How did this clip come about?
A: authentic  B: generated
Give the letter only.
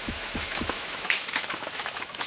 B